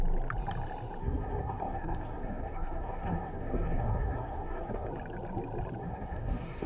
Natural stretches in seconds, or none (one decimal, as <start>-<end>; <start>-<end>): 0.0-1.0; 4.9-5.8